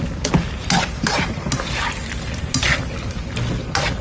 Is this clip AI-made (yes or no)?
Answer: no